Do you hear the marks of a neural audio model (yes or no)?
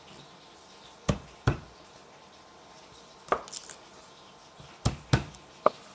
no